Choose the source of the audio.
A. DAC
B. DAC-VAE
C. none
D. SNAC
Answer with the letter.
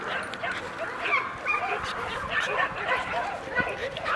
C